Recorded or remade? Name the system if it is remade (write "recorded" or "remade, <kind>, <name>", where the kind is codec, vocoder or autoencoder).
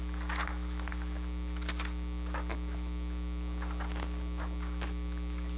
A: recorded